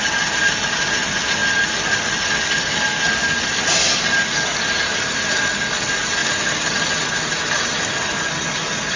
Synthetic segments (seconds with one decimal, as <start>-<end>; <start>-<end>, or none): none